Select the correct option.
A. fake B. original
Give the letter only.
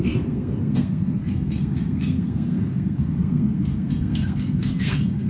A